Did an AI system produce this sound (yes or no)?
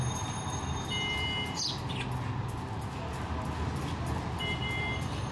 no